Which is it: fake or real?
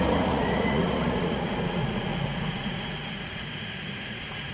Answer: fake